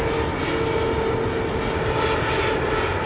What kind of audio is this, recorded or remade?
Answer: recorded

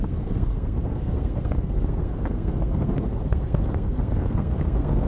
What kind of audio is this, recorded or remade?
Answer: remade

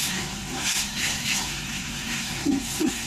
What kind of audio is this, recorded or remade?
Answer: remade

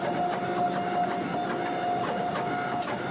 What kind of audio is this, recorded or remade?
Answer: recorded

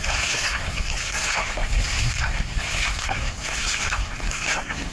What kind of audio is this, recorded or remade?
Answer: remade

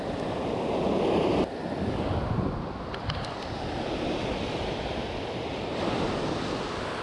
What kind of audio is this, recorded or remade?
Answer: recorded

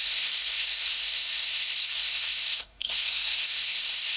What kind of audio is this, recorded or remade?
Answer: remade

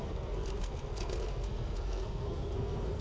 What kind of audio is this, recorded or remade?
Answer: remade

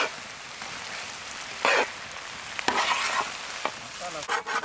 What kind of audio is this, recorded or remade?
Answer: recorded